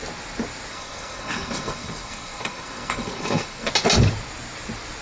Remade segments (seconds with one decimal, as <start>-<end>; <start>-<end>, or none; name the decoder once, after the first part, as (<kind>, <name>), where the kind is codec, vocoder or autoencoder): 0.7-3.7 (codec, SNAC)